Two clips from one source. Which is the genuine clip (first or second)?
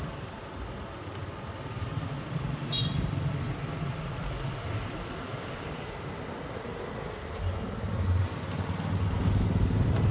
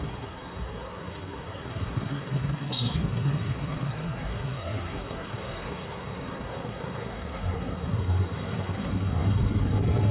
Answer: first